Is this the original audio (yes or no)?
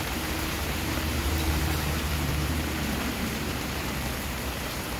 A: no